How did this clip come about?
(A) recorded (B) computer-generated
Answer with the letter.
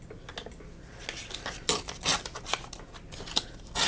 A